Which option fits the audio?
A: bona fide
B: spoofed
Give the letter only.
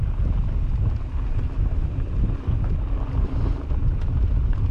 A